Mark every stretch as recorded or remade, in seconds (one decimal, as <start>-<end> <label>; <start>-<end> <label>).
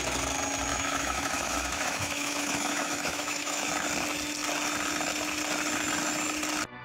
0.0-0.7 recorded; 0.7-3.7 remade; 3.7-6.8 recorded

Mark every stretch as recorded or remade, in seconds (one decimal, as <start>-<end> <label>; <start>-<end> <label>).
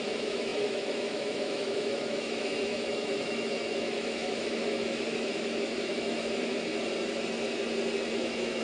0.0-6.7 remade; 6.7-8.1 recorded; 8.1-8.6 remade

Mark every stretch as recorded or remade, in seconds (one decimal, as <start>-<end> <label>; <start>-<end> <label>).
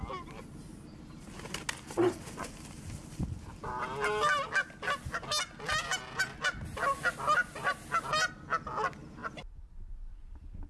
0.0-10.7 recorded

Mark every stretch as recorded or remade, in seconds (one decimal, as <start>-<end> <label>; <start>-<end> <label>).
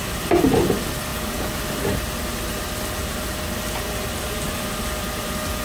0.0-5.6 recorded